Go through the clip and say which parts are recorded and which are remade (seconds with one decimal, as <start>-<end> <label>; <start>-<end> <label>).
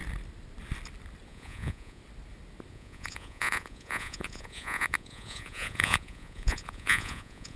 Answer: 0.0-1.3 recorded; 1.3-2.0 remade; 2.0-2.7 recorded; 2.7-7.6 remade